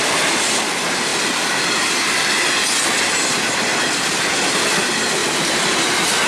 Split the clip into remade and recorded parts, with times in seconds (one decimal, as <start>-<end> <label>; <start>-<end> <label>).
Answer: 0.0-1.1 recorded; 1.1-2.8 remade; 2.8-6.3 recorded